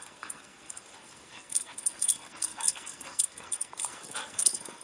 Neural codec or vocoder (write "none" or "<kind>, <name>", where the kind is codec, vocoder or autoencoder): codec, SNAC